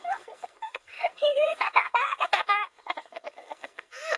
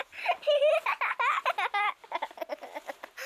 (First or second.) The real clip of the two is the second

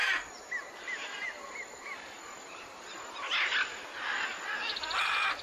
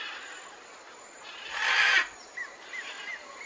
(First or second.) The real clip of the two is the first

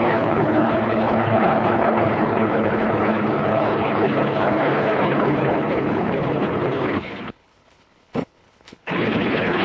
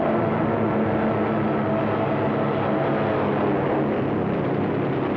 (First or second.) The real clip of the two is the second